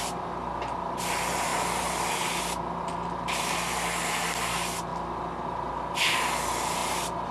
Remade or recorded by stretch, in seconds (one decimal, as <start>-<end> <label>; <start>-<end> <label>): 0.0-7.3 recorded